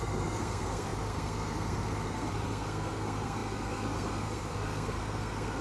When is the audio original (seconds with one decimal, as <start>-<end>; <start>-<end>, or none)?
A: none